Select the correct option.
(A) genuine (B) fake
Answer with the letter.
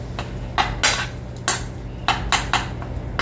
A